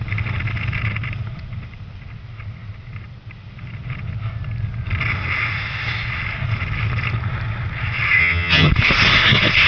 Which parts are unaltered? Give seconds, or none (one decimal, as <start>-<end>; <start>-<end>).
0.0-8.2; 8.7-9.7